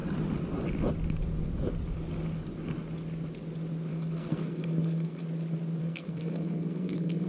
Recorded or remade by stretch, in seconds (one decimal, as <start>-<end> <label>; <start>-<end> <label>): 0.0-3.9 recorded; 3.9-5.2 remade; 5.2-5.8 recorded; 5.8-7.3 remade